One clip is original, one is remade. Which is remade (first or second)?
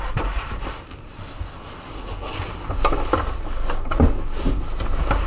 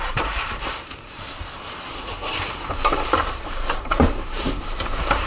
second